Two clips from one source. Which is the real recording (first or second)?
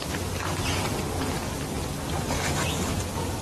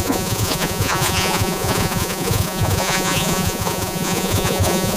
first